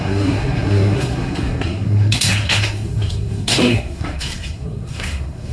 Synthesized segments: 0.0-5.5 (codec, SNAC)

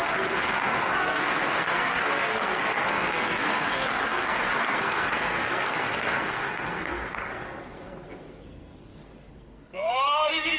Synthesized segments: 0.0-10.6 (codec, SNAC)

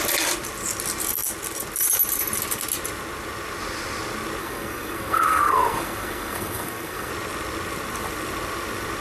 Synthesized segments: 4.4-7.1 (codec, SNAC)

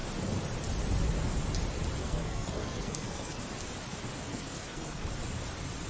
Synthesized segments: 2.0-3.4 (codec, SNAC); 4.3-5.1

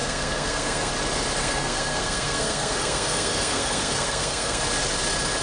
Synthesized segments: 0.0-0.9 (codec, SNAC); 1.4-4.6

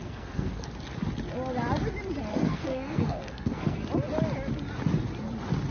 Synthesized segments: 0.0-0.7 (codec, SNAC); 2.3-3.8